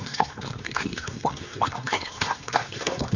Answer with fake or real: fake